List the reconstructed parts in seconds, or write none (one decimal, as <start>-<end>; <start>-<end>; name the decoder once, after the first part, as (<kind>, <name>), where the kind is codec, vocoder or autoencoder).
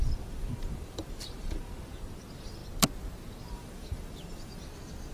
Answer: 0.0-2.6 (vocoder, BigVGAN v2); 3.5-5.1